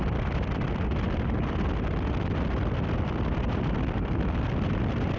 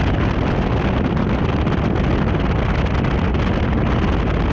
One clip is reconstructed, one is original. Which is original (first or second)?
second